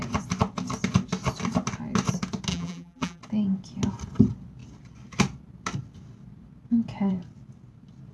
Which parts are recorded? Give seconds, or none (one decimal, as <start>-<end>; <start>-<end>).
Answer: 0.0-2.5; 3.2-8.1